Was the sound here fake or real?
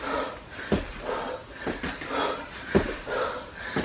real